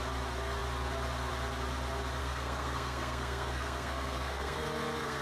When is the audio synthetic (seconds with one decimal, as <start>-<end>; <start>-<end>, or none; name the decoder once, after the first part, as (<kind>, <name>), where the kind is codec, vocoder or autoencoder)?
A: 2.2-5.2 (codec, SNAC)